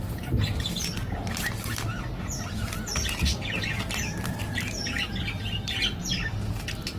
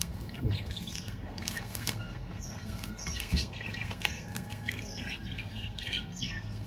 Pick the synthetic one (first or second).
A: second